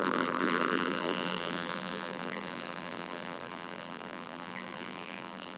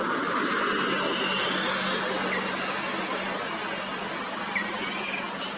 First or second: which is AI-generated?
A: first